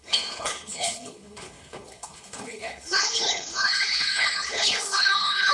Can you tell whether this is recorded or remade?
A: remade